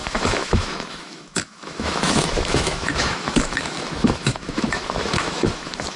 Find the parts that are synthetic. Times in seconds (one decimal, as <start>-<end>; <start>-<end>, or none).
0.0-6.0